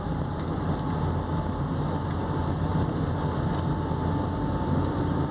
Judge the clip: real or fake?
real